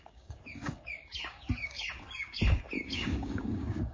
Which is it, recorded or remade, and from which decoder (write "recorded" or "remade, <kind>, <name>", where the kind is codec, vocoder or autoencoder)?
remade, codec, DAC